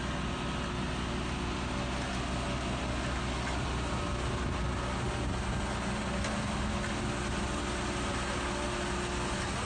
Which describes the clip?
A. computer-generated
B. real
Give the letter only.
B